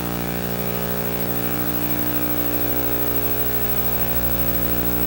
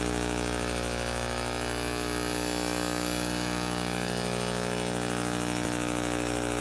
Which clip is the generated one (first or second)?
second